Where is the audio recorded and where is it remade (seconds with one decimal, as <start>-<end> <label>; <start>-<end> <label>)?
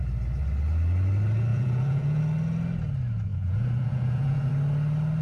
0.0-1.5 recorded; 1.5-2.2 remade; 2.2-3.3 recorded; 3.3-4.5 remade; 4.5-5.2 recorded